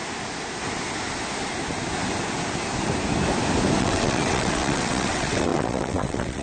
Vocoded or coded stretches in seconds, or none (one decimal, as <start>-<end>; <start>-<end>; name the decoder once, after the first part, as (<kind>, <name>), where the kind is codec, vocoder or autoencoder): 3.8-6.4 (vocoder, WaveNeXt)